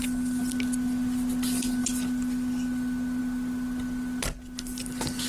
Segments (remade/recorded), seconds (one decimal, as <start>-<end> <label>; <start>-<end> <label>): 0.0-5.3 recorded